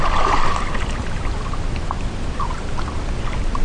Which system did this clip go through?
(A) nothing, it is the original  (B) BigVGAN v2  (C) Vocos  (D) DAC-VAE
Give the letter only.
A